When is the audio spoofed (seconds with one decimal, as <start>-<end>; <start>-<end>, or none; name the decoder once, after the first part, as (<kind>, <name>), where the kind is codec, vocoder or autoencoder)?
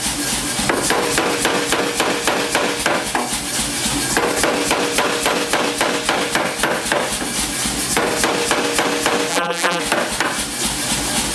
9.3-9.8 (vocoder, BigVGAN v2)